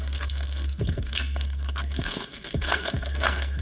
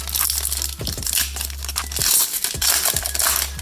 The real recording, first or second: second